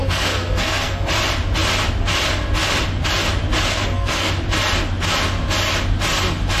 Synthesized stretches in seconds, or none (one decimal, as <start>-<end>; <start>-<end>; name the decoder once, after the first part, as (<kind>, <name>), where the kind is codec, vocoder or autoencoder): 0.0-1.1 (codec, SNAC); 3.7-4.3